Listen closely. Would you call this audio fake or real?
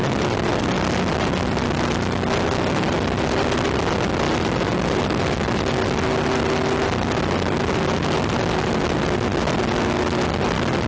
real